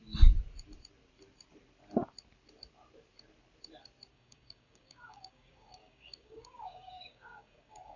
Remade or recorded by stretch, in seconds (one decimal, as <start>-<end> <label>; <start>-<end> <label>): 0.0-4.1 recorded; 4.1-8.0 remade